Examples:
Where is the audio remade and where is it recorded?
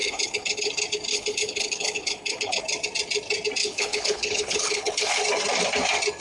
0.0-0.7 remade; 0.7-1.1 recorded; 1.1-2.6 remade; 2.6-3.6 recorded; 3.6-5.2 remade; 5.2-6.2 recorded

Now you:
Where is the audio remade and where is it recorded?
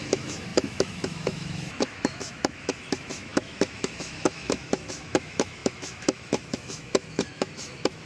0.0-8.1 remade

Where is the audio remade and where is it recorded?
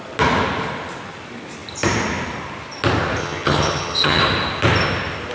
0.0-3.2 recorded; 3.2-4.2 remade; 4.2-5.3 recorded